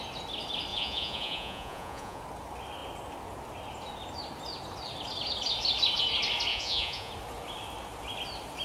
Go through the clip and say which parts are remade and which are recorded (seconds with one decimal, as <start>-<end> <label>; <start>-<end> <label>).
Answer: 0.0-0.7 recorded; 0.7-2.2 remade; 2.2-6.5 recorded; 6.5-7.1 remade; 7.1-8.6 recorded